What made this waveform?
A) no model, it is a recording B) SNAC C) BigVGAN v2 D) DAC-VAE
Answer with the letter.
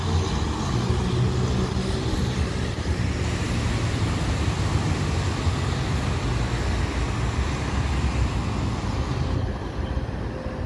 A